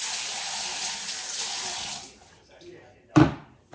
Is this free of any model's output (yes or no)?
yes